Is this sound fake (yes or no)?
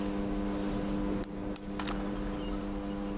no